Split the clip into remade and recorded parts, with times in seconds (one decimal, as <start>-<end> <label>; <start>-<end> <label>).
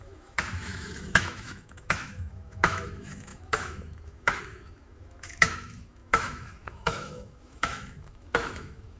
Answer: 0.0-9.0 remade